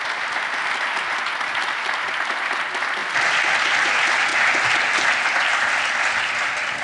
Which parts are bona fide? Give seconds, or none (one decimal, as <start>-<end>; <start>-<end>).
0.0-6.8

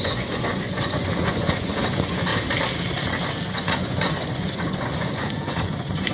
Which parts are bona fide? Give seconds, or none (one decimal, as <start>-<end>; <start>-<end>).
2.3-3.5

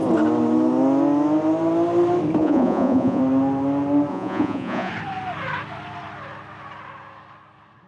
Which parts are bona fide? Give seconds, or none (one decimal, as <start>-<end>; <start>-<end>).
0.0-2.4; 3.2-4.1; 4.9-7.9

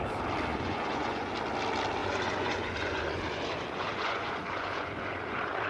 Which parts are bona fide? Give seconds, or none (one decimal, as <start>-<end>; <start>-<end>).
0.0-0.5; 1.3-2.0

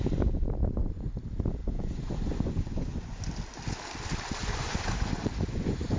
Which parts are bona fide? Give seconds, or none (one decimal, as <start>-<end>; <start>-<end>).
0.0-0.6; 1.1-1.6; 3.2-4.4